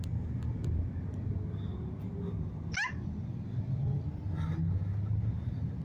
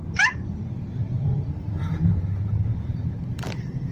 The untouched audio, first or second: first